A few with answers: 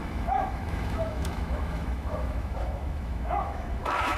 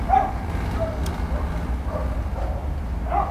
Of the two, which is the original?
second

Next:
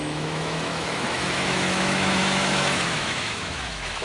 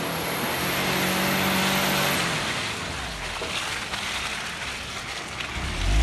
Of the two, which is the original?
second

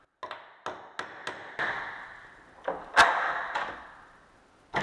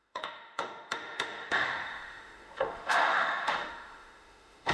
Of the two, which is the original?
first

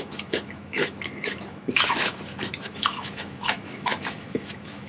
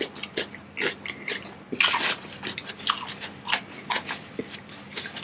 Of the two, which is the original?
second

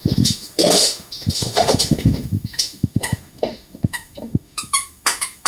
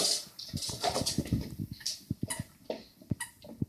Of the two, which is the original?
second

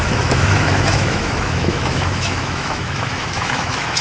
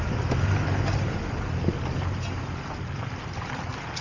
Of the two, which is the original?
second